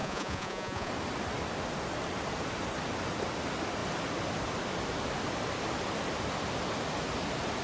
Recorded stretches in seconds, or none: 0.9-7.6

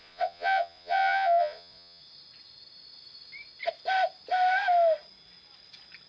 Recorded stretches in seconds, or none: 2.0-6.1

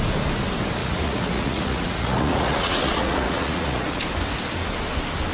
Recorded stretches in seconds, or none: 0.0-0.8; 4.0-5.3

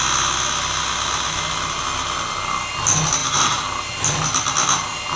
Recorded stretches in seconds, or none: 0.0-3.2; 3.9-5.2

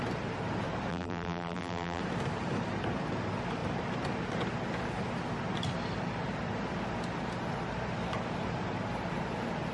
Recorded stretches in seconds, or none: 0.0-0.9; 2.0-9.7

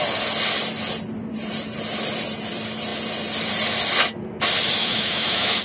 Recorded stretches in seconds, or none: 0.0-4.8

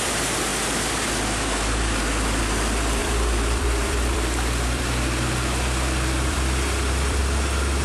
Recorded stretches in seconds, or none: 0.0-3.0; 7.2-7.8